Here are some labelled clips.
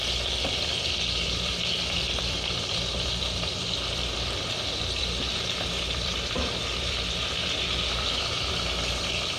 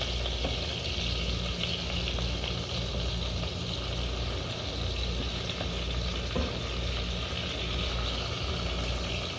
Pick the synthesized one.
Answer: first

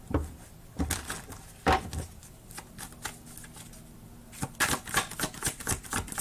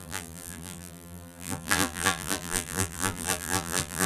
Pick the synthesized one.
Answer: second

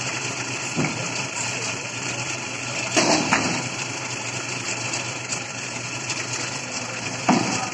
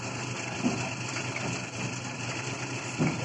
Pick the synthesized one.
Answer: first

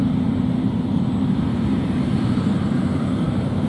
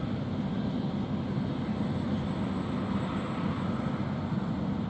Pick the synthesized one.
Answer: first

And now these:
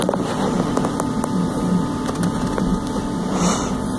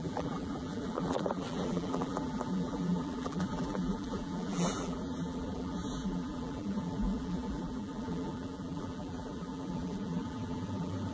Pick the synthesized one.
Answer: second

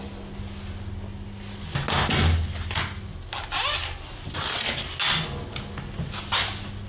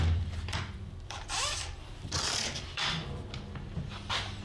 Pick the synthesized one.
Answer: second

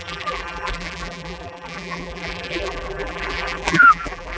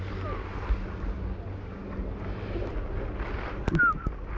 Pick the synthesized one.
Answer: first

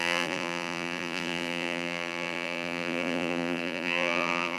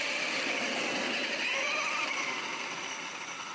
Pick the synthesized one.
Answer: first